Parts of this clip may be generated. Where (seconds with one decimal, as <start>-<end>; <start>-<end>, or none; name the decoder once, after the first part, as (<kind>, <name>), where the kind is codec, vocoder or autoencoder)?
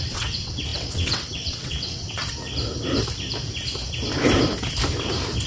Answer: 0.0-2.2 (vocoder, WaveNeXt)